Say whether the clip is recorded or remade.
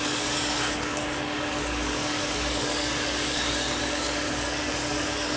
remade